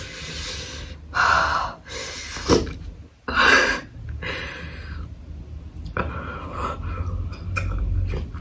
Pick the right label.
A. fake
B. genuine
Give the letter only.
B